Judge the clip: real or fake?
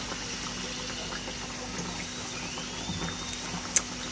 real